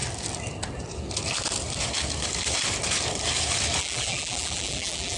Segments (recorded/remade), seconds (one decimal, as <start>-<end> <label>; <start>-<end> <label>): 0.0-3.8 recorded; 3.8-5.2 remade